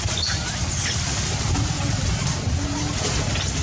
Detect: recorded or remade recorded